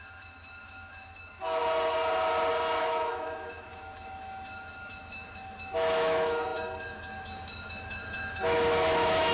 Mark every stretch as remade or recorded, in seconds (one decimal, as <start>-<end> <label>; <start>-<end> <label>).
0.0-1.6 remade; 1.6-2.8 recorded; 2.8-9.3 remade